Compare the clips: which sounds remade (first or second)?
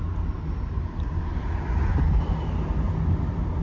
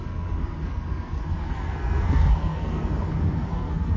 second